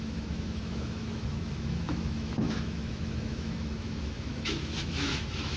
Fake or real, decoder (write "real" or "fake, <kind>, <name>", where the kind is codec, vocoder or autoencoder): fake, autoencoder, DAC-VAE